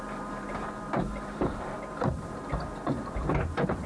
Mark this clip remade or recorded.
remade